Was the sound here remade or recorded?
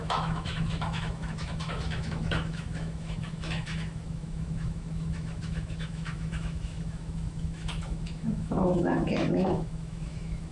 remade